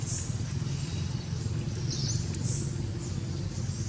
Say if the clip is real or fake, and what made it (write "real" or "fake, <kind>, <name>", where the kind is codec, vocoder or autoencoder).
real